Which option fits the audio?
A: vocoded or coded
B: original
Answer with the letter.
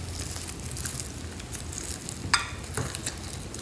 B